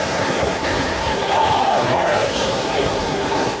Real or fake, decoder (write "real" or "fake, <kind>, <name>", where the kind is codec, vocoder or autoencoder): fake, codec, SNAC